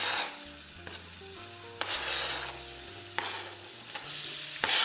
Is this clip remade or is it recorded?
recorded